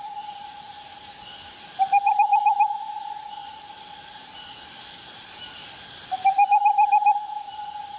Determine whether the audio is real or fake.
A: fake